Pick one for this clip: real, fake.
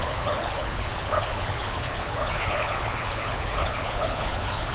fake